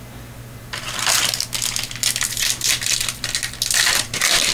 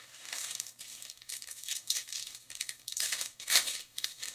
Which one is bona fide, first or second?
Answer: first